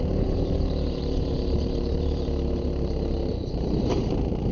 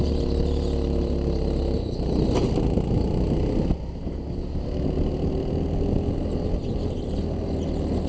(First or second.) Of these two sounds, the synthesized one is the first